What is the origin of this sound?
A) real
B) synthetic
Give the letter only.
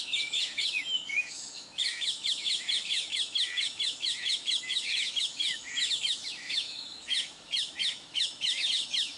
B